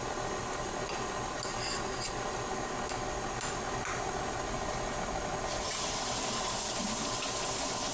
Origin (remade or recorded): recorded